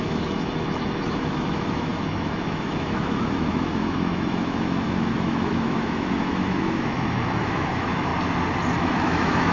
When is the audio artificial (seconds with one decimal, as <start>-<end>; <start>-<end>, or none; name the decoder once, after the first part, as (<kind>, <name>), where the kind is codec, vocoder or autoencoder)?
0.0-8.1 (autoencoder, DAC-VAE); 8.8-9.5